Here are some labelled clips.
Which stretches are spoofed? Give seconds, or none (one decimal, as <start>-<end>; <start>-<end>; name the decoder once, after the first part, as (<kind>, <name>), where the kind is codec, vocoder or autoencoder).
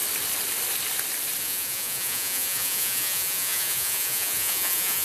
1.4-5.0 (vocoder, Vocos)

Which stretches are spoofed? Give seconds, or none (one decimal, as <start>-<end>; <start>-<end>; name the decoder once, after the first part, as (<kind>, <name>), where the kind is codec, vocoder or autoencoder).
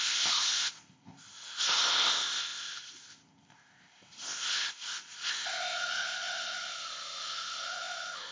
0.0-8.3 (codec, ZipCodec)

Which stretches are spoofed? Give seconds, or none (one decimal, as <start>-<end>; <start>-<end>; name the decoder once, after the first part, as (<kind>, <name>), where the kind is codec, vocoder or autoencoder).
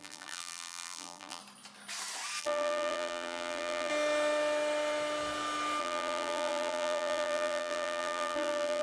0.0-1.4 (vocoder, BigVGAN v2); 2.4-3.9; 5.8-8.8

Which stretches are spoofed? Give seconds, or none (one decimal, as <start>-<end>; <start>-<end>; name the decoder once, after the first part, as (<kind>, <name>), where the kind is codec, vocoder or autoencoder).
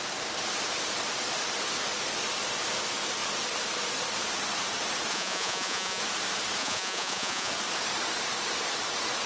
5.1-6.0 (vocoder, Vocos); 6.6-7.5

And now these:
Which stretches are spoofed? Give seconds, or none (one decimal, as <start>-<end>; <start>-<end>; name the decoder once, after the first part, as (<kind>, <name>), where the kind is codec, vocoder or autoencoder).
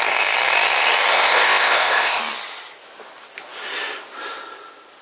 1.1-2.2 (codec, ZipCodec)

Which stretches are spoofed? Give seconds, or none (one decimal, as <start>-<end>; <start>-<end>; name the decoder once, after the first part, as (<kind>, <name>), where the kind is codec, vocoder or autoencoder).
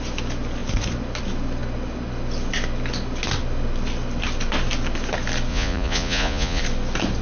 5.5-6.6 (vocoder, Vocos)